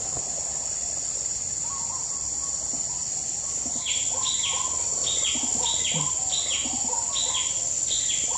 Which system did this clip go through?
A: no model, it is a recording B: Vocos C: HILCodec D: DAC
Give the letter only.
A